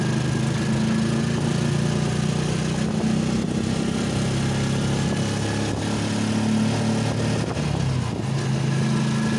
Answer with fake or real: real